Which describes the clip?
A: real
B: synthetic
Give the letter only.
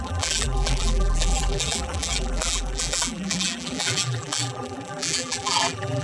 B